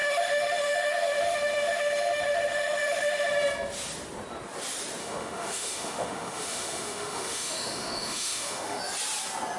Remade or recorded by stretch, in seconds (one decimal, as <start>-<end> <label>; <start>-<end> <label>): 0.0-3.3 remade; 3.3-5.0 recorded; 5.0-8.8 remade; 8.8-9.6 recorded